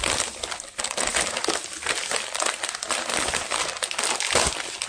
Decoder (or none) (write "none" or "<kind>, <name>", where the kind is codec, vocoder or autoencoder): none